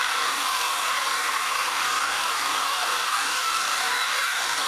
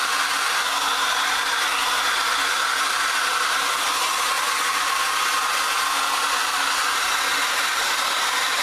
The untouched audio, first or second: second